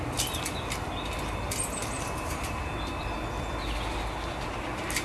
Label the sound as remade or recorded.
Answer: recorded